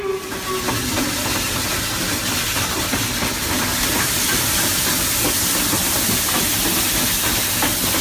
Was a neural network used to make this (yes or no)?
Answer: no